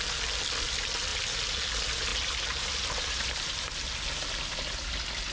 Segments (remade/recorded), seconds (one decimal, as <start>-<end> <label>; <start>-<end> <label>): 0.0-2.1 recorded; 2.1-3.7 remade; 3.7-5.3 recorded